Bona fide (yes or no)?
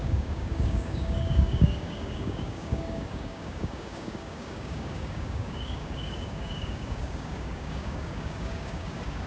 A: no